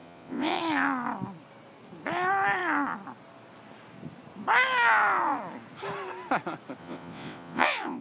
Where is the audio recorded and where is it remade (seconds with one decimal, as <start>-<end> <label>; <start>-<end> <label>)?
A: 0.0-0.6 remade; 0.6-6.8 recorded; 6.8-8.0 remade

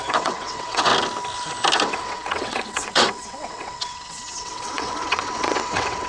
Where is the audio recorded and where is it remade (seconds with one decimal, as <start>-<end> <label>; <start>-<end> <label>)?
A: 0.0-0.9 remade; 0.9-1.8 recorded; 1.8-6.1 remade